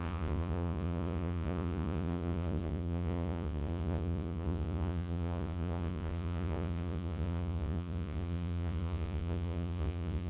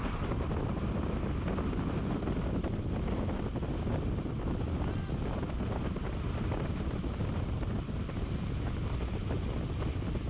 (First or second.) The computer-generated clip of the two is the first